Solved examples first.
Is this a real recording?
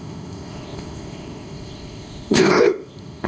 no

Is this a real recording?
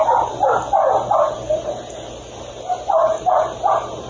yes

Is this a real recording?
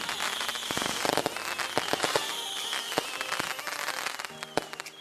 yes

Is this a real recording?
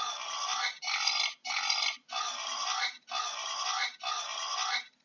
yes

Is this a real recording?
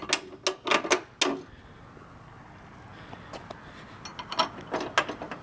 yes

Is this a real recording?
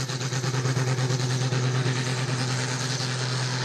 yes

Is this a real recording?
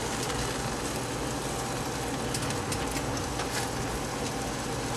yes